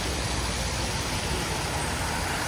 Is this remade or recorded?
recorded